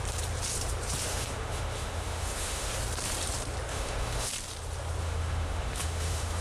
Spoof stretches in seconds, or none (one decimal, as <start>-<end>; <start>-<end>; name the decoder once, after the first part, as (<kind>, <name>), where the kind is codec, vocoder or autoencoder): 1.1-2.7 (autoencoder, DAC-VAE); 3.7-4.3; 5.0-6.4